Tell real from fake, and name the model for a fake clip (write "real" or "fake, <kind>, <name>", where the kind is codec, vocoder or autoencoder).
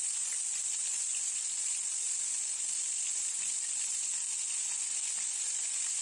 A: real